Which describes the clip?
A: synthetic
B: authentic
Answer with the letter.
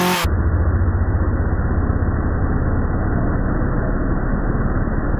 B